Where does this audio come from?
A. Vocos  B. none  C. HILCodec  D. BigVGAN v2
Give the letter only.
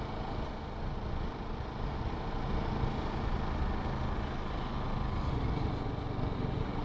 B